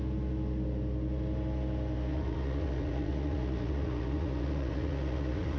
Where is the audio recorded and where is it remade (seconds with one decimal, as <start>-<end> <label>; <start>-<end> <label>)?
0.0-2.1 recorded; 2.1-5.6 remade

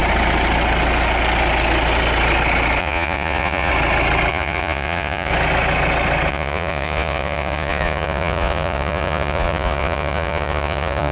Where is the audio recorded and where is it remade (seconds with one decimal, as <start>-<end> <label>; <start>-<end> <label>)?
0.0-2.8 recorded; 2.8-3.7 remade; 3.7-4.3 recorded; 4.3-5.3 remade; 5.3-6.3 recorded; 6.3-11.1 remade

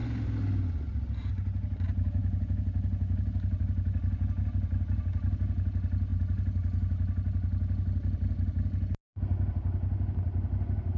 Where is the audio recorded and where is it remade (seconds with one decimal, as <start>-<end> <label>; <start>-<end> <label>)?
0.0-11.0 recorded

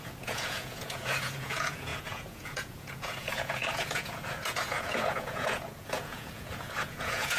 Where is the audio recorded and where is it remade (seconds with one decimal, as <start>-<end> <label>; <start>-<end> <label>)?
0.0-7.4 remade

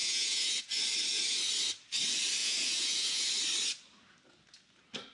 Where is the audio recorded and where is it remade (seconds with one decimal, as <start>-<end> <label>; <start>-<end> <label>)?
0.0-0.8 remade; 0.8-2.4 recorded; 2.4-3.3 remade; 3.3-5.1 recorded